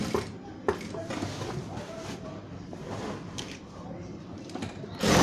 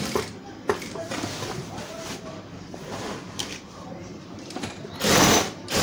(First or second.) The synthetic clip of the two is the second